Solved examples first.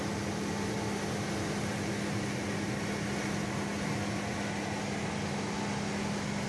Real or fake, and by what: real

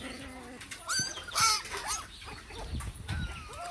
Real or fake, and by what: real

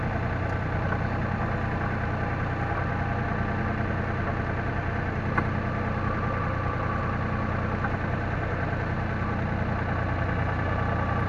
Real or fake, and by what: real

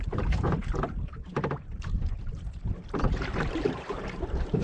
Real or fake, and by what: fake, vocoder, BigVGAN v2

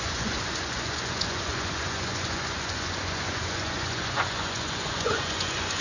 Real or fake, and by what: fake, vocoder, Vocos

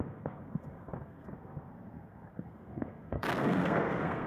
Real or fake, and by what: fake, codec, SNAC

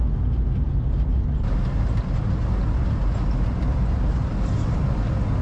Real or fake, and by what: real